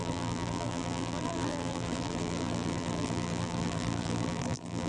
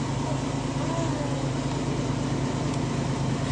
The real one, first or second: second